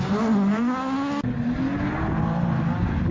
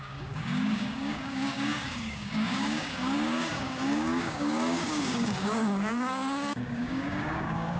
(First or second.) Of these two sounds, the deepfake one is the second